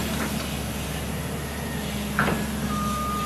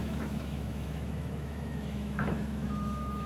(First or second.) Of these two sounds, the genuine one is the first